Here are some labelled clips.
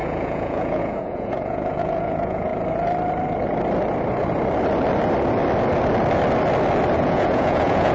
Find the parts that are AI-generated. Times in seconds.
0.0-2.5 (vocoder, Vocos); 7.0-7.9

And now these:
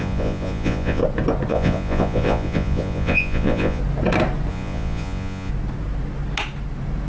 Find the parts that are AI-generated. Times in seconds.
0.0-1.0 (vocoder, Vocos); 1.5-3.8; 4.5-5.5

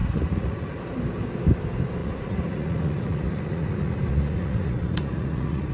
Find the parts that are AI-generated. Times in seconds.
0.0-0.8 (vocoder, Vocos); 2.0-5.7

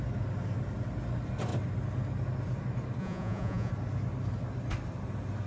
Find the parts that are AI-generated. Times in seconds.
3.0-3.7 (vocoder, Vocos)